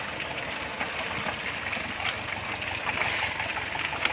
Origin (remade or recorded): recorded